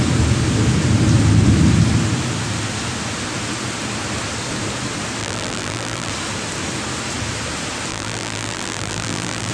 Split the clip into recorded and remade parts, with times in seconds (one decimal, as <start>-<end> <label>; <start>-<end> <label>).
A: 0.0-5.2 recorded; 5.2-6.1 remade; 6.1-7.9 recorded; 7.9-9.5 remade